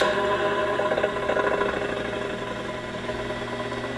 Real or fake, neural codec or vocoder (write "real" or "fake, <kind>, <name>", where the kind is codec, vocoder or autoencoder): real